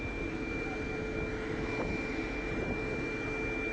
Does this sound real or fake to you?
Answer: real